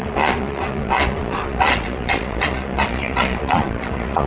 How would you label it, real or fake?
fake